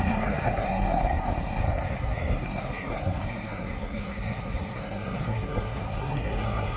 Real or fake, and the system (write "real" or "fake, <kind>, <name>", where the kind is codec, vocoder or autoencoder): fake, codec, SNAC